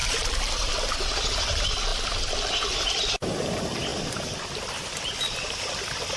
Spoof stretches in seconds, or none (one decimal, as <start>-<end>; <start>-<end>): 0.0-0.7